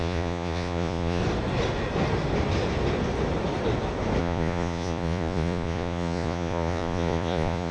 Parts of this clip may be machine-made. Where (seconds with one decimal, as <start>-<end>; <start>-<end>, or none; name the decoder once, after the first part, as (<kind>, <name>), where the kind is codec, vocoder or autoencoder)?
0.0-1.2 (vocoder, Vocos); 4.2-7.7